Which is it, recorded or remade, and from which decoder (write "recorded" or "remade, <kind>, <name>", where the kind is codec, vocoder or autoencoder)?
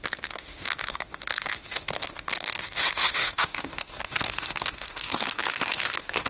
remade, autoencoder, DAC-VAE